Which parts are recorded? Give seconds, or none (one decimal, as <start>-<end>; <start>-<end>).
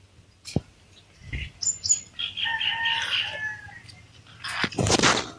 0.0-5.4